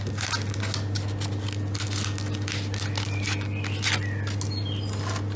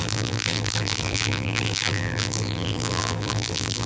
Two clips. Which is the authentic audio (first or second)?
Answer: first